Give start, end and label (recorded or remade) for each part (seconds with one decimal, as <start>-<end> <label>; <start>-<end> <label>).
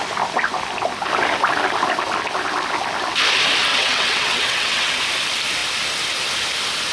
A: 0.0-3.7 recorded; 3.7-5.0 remade; 5.0-6.9 recorded